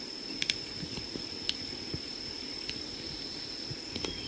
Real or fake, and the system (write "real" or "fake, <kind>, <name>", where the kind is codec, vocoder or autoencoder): real